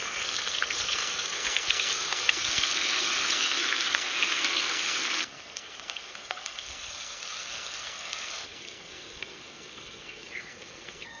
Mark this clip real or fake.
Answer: fake